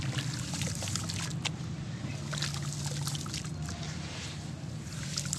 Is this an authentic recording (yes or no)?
yes